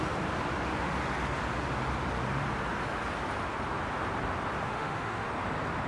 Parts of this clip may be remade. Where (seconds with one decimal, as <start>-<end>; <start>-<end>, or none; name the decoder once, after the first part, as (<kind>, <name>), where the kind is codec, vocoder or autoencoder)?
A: 4.7-5.3 (autoencoder, DAC-VAE)